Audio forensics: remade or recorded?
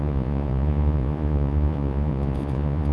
remade